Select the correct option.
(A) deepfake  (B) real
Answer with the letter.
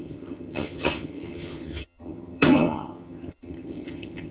A